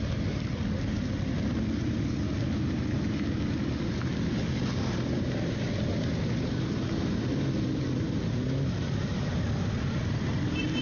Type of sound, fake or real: real